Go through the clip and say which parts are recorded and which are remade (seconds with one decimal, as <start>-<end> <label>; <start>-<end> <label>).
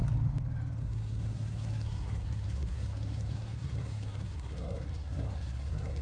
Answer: 0.0-0.8 recorded; 0.8-6.0 remade